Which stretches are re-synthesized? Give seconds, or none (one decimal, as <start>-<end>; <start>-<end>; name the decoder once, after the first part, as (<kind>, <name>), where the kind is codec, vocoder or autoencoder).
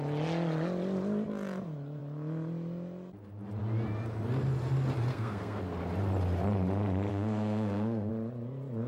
5.1-5.6 (codec, SNAC); 7.1-8.1